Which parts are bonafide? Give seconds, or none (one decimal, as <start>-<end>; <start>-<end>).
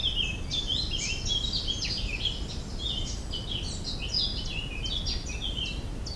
0.0-6.2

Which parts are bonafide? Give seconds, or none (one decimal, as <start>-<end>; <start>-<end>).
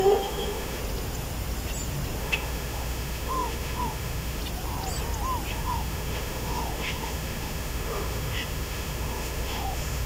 0.8-2.2; 4.4-5.5